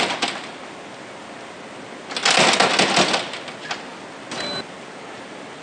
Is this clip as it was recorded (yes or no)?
yes